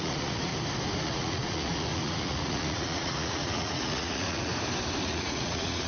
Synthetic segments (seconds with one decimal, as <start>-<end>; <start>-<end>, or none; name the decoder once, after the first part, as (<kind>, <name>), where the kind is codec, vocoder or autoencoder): 0.0-0.5 (vocoder, Vocos); 1.0-4.5; 5.0-5.9